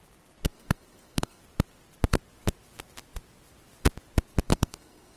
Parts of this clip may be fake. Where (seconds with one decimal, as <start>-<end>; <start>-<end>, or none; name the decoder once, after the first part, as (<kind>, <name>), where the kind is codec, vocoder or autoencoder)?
0.5-1.4 (codec, SNAC); 4.5-5.2